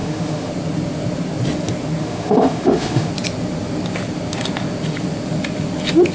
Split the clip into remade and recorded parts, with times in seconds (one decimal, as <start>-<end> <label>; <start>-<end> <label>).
0.0-0.5 remade; 0.5-2.0 recorded; 2.0-3.1 remade; 3.1-6.1 recorded